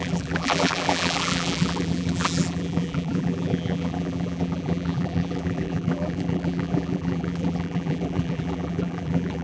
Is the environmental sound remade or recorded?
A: remade